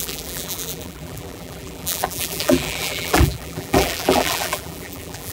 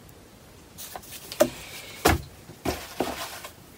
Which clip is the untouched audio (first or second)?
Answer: second